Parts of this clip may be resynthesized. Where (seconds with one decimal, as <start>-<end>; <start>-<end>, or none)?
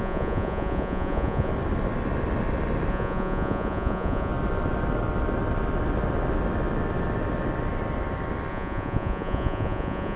0.0-1.5; 2.9-4.3; 8.5-10.2